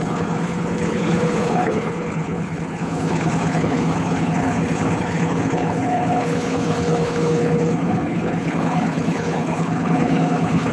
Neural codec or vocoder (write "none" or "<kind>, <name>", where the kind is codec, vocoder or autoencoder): codec, HILCodec